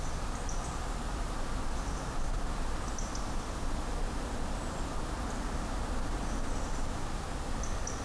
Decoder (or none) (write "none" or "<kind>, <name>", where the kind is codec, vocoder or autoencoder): none